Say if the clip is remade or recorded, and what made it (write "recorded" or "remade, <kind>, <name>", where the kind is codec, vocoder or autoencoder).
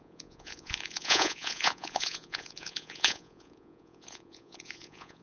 remade, vocoder, Vocos